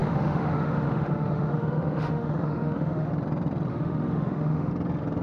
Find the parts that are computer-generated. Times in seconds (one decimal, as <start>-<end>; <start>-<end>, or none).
0.0-3.1; 3.7-4.7